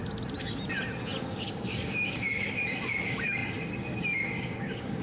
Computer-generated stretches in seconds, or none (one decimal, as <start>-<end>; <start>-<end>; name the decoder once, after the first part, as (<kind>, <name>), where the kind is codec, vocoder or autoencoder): 1.3-5.0 (codec, DAC)